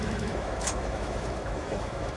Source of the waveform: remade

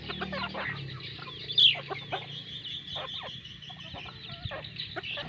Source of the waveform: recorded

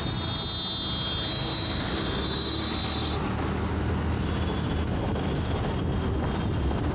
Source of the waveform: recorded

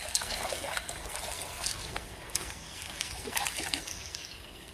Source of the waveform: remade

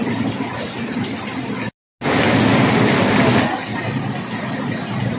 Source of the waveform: recorded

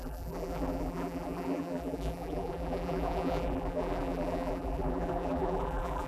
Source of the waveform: remade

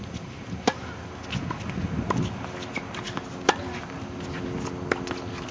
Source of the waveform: recorded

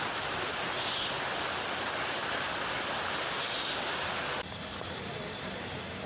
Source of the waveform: recorded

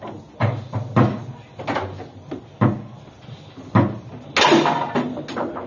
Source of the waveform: recorded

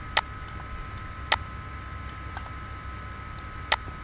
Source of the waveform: recorded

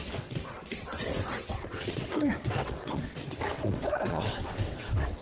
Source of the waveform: remade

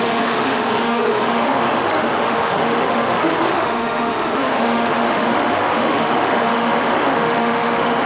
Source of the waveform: remade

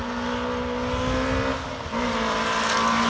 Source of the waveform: recorded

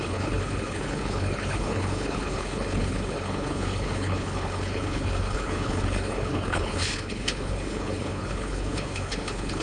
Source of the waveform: remade